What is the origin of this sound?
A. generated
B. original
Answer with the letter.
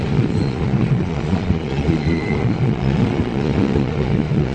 A